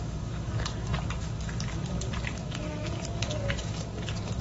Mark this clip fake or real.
fake